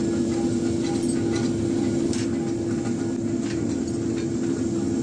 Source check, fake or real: real